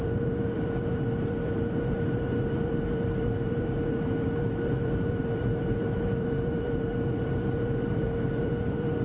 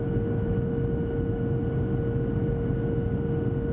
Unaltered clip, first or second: second